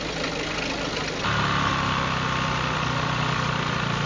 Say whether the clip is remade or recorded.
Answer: recorded